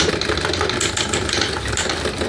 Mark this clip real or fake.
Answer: real